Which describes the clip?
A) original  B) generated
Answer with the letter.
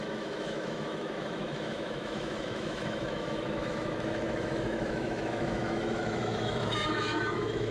B